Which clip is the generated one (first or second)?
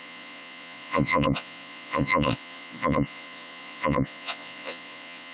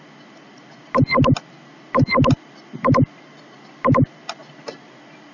first